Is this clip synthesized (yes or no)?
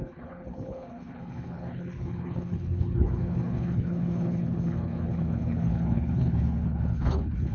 yes